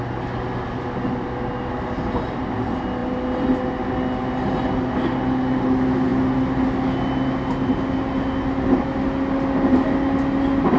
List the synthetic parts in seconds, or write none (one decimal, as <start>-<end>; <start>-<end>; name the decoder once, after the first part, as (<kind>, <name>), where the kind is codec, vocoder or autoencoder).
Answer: none